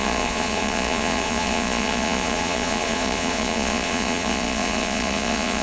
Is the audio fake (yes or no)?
yes